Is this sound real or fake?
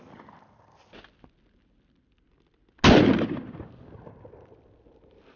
real